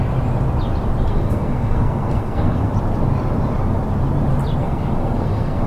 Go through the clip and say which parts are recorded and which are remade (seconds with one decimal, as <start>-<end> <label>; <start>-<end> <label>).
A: 0.0-1.1 recorded; 1.1-2.7 remade; 2.7-4.6 recorded; 4.6-5.7 remade